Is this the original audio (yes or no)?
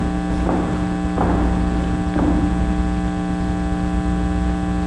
yes